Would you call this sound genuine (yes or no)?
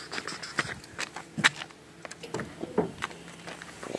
yes